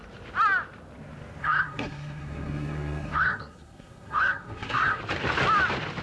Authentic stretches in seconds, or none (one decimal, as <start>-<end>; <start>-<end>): 0.0-1.4; 5.0-6.0